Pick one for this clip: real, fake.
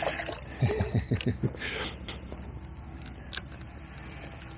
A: real